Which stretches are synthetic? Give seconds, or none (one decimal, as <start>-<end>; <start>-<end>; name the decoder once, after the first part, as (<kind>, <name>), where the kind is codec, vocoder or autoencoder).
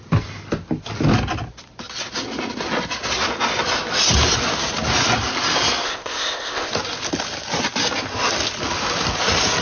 5.8-6.7 (codec, ZipCodec)